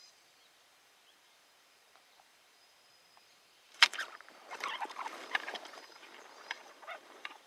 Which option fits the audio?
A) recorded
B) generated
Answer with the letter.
B